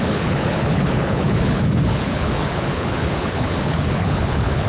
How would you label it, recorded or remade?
remade